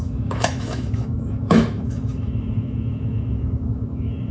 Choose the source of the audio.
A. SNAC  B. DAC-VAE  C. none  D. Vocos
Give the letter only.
B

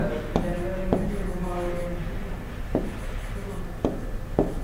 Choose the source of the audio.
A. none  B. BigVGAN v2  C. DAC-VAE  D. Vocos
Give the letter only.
A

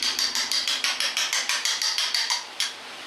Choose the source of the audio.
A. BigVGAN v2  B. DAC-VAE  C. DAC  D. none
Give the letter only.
A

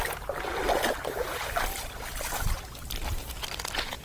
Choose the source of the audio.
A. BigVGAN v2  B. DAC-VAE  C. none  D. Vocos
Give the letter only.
C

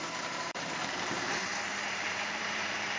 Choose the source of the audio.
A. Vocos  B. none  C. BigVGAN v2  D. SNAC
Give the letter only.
C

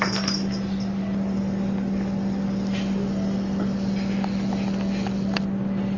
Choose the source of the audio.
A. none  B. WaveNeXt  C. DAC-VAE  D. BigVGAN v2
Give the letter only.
A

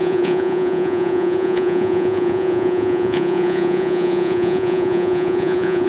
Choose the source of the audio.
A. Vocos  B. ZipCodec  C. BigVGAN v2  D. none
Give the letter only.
A